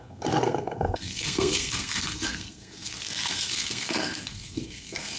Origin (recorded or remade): remade